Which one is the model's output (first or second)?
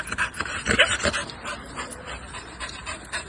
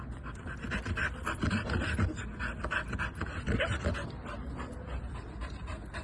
first